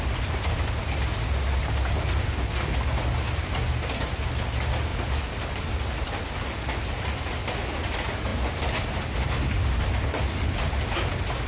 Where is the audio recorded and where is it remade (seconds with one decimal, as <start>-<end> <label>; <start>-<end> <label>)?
0.0-11.5 recorded